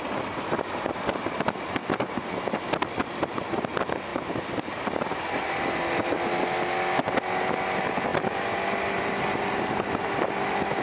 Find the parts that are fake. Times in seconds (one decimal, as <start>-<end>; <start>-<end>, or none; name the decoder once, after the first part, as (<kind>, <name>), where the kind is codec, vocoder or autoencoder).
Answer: none